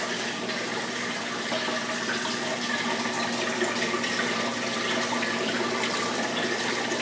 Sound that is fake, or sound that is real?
real